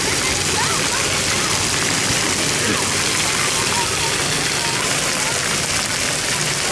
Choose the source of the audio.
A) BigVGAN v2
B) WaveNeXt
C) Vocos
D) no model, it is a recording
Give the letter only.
D